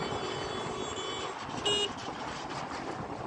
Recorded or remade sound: recorded